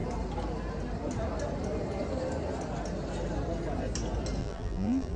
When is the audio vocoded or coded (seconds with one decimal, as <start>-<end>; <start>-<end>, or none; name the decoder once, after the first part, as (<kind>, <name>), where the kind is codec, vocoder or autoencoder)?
4.4-5.2 (vocoder, BigVGAN v2)